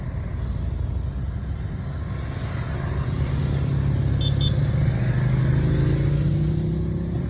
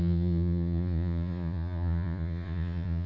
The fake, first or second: second